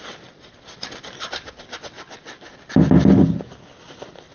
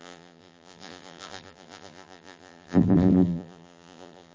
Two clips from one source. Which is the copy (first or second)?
second